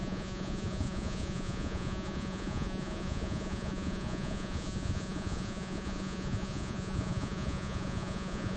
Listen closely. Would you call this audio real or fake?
fake